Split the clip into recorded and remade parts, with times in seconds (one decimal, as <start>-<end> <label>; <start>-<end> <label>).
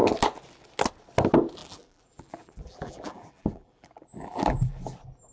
0.0-1.6 recorded; 1.6-4.8 remade; 4.8-5.3 recorded